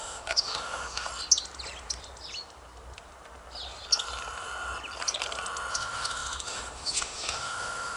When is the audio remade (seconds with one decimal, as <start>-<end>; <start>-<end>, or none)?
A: 0.0-1.1; 5.7-8.0